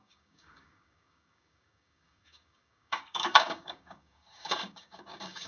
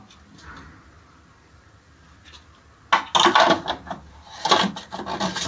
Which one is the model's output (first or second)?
first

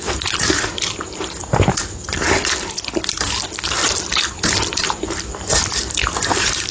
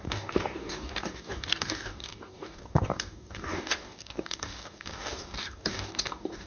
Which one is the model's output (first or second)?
second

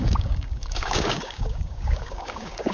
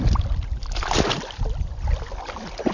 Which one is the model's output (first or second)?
first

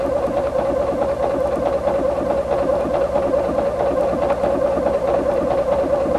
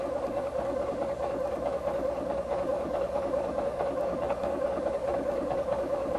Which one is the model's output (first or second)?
second